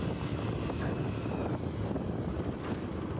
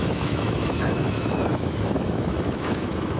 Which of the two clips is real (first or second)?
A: first